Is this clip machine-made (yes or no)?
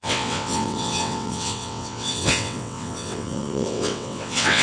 yes